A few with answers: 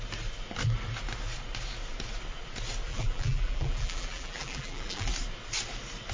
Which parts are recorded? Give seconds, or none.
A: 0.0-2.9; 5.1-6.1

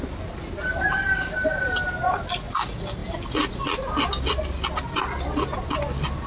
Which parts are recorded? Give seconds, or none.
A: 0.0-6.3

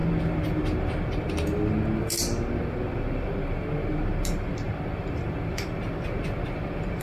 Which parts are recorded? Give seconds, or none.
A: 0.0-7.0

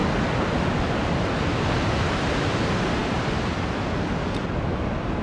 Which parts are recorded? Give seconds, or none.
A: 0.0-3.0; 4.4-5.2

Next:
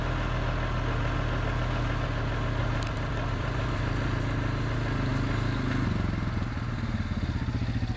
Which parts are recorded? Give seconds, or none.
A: 0.0-2.6; 4.2-8.0

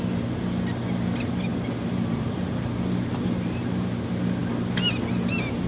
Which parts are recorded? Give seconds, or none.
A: 0.0-1.5; 4.0-5.7